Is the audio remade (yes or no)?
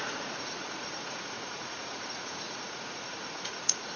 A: yes